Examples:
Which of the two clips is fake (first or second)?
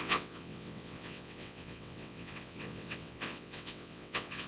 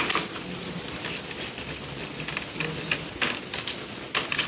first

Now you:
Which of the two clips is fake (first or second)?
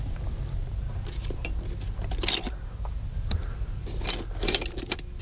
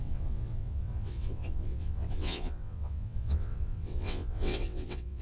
second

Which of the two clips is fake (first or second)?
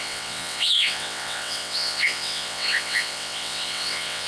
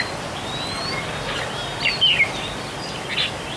first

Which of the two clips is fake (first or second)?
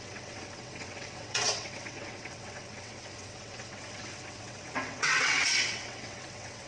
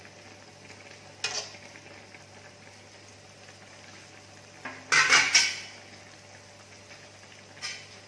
first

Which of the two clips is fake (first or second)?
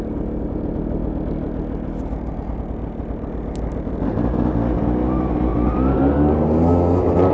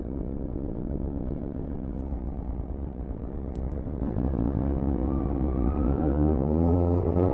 second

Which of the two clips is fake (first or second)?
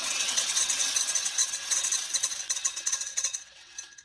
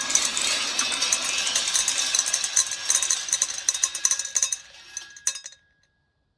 first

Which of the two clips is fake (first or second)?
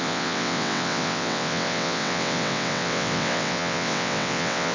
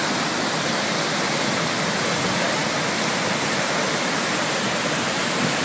first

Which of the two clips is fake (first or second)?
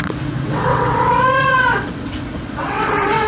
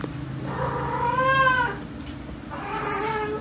first